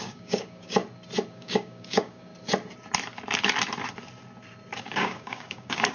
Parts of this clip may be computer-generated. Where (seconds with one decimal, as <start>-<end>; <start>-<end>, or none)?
0.0-0.8; 1.3-2.3; 4.8-5.9